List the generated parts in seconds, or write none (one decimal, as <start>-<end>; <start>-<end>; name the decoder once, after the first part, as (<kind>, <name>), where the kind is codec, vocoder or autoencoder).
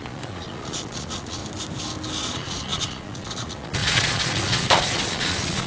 0.0-1.4 (vocoder, Vocos); 2.2-5.7